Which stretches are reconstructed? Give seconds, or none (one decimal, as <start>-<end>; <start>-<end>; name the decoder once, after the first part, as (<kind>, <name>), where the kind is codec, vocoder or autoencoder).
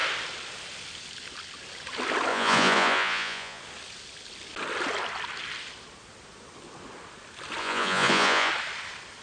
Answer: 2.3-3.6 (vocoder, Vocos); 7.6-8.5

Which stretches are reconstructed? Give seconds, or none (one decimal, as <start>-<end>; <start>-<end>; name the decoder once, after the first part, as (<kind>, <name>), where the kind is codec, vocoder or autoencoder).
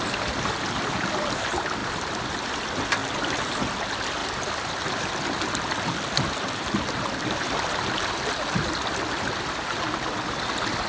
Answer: 1.8-2.3 (vocoder, BigVGAN v2); 4.2-6.4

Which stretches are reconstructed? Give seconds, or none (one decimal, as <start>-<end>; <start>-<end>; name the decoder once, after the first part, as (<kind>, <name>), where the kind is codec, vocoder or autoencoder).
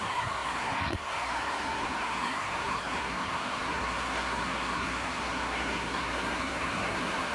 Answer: 0.0-7.3 (codec, SNAC)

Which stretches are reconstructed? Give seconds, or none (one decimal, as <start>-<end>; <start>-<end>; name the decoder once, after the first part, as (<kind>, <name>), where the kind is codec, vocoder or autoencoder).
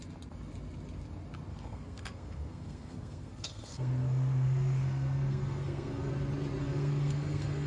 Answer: 1.5-6.1 (codec, SNAC); 6.6-7.7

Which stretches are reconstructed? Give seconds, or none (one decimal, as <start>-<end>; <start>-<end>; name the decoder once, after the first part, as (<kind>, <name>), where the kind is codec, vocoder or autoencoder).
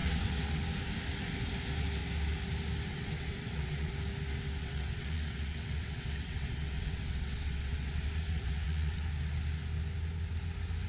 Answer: 0.0-0.6 (vocoder, WaveNeXt); 2.9-3.9; 4.6-9.1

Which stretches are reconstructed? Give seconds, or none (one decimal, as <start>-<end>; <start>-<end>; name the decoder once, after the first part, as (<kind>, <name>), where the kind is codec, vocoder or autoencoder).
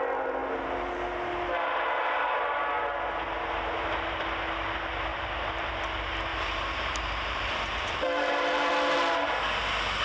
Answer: 5.1-5.8 (vocoder, BigVGAN v2); 6.3-8.7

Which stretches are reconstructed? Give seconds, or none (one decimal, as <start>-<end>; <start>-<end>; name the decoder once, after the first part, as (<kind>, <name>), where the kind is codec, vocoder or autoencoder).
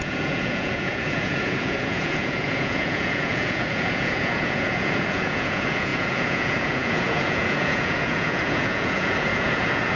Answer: 0.0-10.0 (vocoder, Vocos)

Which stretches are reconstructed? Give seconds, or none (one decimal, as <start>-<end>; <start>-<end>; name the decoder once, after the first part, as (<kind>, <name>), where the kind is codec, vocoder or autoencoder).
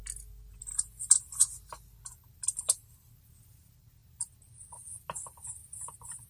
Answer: 0.6-5.6 (vocoder, BigVGAN v2)